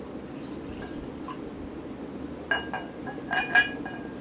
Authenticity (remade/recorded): recorded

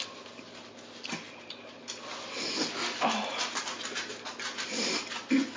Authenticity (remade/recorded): recorded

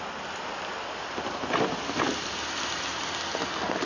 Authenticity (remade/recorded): recorded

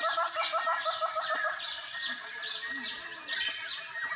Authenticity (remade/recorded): recorded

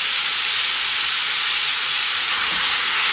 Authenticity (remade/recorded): remade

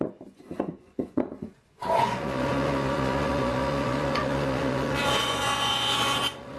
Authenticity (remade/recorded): remade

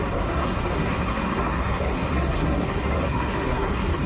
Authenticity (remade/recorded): remade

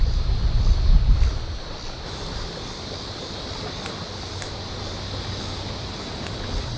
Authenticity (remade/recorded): recorded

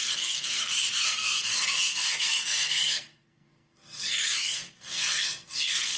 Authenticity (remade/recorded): remade